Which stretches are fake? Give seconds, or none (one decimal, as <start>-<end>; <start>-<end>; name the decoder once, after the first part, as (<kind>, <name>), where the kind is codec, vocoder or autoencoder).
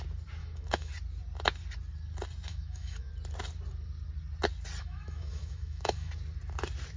0.4-0.9 (autoencoder, DAC-VAE); 2.5-3.1; 4.8-6.1